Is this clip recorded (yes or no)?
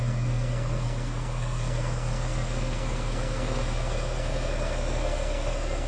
no